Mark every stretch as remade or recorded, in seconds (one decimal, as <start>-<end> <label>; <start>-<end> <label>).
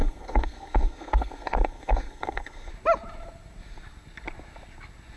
0.0-2.7 remade; 2.7-5.2 recorded